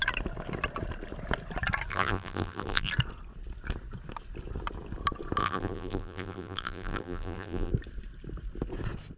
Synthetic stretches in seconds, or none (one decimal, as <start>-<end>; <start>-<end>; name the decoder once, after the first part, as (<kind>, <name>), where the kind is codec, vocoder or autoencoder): 1.9-2.9 (vocoder, BigVGAN v2); 5.4-7.7